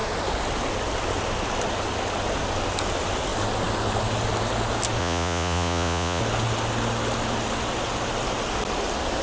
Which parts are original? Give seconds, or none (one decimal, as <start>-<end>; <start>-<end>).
0.0-5.0; 6.2-9.2